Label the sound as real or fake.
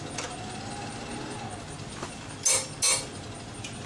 real